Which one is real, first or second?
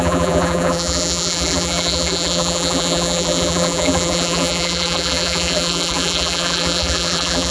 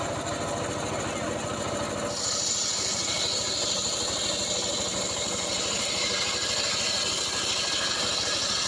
second